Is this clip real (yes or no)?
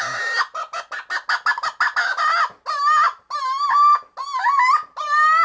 yes